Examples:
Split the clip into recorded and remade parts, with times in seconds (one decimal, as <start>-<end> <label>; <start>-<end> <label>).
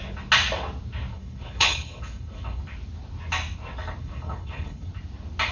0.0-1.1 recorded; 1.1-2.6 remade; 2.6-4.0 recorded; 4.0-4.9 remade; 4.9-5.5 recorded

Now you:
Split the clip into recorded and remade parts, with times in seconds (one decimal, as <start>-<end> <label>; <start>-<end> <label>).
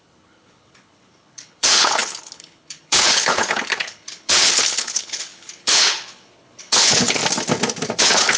0.0-7.2 remade; 7.2-8.0 recorded; 8.0-8.4 remade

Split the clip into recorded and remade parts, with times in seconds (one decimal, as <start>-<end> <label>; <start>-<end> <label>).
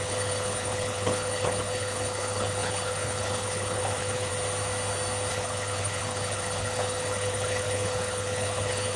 0.0-4.3 remade; 4.3-5.3 recorded; 5.3-9.0 remade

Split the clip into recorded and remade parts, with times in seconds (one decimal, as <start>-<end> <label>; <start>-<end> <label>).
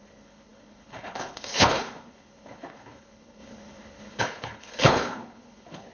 0.0-5.9 remade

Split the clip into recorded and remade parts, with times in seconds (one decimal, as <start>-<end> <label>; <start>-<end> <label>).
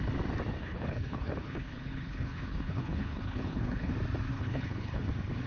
0.0-0.6 recorded; 0.6-3.9 remade; 3.9-4.3 recorded; 4.3-5.1 remade; 5.1-5.5 recorded